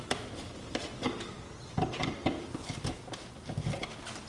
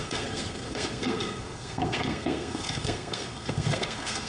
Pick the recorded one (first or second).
first